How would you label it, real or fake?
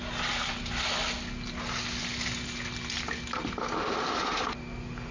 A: real